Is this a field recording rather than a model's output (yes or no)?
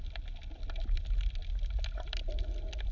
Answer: yes